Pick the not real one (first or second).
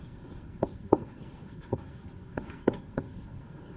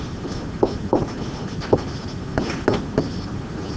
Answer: first